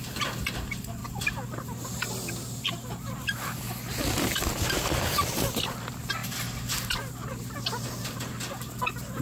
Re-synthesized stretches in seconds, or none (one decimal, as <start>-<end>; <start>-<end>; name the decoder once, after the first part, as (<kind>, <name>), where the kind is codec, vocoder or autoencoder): none

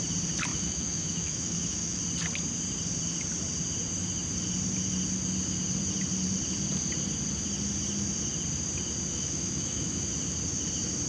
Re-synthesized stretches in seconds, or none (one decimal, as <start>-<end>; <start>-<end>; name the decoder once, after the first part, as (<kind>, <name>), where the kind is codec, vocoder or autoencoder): 0.5-2.0 (autoencoder, DAC-VAE); 9.1-10.1

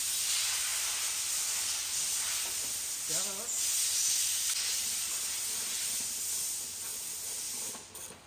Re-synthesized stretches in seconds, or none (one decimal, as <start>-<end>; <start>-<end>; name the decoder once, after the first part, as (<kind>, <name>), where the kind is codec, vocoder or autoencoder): none

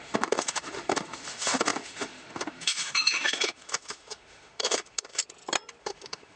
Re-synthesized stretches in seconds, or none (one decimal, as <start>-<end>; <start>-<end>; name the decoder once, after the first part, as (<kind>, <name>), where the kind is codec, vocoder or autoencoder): 0.0-5.2 (autoencoder, DAC-VAE); 5.8-6.4

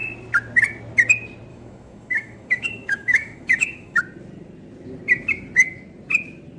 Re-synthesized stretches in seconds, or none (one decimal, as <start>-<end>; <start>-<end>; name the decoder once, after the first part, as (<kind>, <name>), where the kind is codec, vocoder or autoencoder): 1.5-4.0 (autoencoder, DAC-VAE)

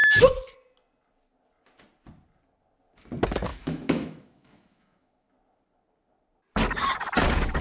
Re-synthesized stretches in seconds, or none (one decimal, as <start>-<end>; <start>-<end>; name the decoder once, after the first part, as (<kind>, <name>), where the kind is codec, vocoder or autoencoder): 3.5-5.3 (autoencoder, DAC-VAE)